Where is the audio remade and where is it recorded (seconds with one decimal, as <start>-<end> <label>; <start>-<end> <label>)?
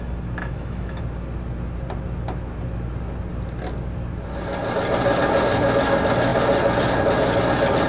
0.0-0.4 recorded; 0.4-1.0 remade; 1.0-7.9 recorded